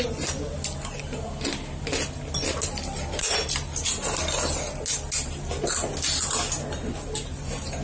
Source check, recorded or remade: recorded